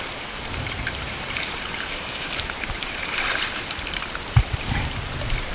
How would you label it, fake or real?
fake